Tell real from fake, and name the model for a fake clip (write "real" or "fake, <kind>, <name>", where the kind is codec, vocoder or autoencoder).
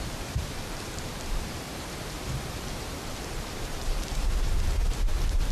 fake, vocoder, BigVGAN v2